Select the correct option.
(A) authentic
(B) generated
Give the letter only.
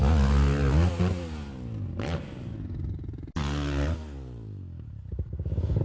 A